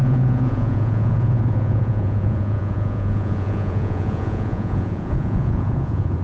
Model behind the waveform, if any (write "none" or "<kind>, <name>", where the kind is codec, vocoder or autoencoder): vocoder, Vocos